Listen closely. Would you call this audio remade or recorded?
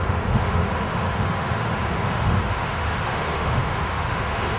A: remade